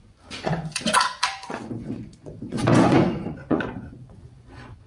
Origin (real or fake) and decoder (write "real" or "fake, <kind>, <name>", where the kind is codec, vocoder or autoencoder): fake, vocoder, Vocos